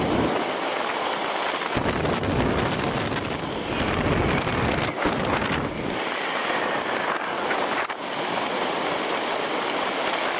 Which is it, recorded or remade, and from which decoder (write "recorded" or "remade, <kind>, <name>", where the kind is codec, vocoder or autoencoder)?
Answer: recorded